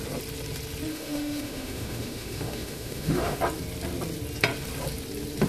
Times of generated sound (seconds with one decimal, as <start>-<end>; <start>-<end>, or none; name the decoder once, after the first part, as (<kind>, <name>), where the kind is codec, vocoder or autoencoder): 0.9-3.4 (autoencoder, DAC-VAE)